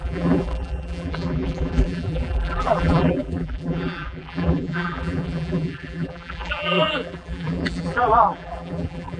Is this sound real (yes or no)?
no